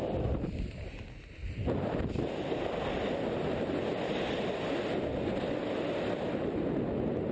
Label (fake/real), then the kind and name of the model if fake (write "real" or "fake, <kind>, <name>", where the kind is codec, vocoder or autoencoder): real